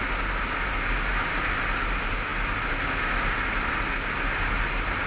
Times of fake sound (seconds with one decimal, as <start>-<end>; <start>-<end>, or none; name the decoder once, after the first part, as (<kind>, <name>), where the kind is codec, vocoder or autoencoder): none